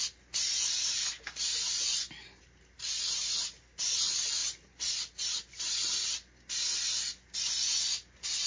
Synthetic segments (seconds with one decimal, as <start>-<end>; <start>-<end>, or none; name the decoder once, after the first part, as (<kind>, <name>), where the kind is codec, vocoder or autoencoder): none